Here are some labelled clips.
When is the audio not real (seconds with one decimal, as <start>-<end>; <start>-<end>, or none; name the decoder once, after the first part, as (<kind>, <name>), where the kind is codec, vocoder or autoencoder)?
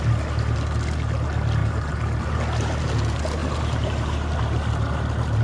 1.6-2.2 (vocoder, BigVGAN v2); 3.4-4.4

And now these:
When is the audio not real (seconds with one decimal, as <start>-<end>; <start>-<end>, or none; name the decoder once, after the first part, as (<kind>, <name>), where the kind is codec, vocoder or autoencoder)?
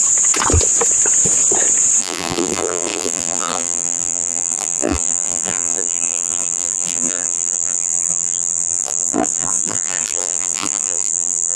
2.0-11.6 (vocoder, BigVGAN v2)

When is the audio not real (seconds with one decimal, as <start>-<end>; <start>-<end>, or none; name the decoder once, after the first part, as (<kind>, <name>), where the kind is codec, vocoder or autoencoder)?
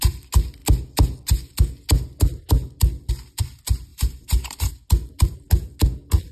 3.9-4.7 (vocoder, BigVGAN v2)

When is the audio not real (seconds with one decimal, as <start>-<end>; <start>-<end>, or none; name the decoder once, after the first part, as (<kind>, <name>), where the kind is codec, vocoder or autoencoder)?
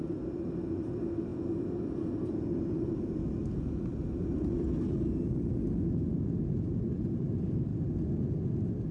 none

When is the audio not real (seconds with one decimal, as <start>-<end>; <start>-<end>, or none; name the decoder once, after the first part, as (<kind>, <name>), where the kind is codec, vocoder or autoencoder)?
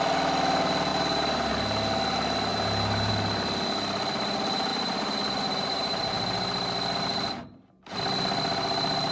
0.9-1.5 (vocoder, BigVGAN v2); 2.5-3.1; 4.7-6.1